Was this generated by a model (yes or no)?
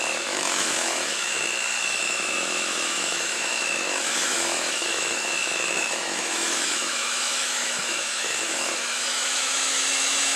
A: yes